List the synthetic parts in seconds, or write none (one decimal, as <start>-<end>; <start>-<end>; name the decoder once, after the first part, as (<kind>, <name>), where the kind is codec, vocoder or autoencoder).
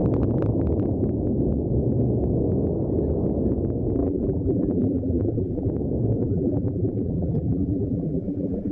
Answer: 4.0-5.7 (vocoder, BigVGAN v2); 6.2-8.7